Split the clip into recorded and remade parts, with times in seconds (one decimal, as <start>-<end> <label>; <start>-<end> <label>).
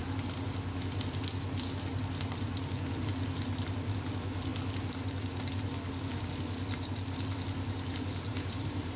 0.0-8.3 recorded; 8.3-9.0 remade